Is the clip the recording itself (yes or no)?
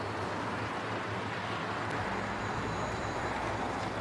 yes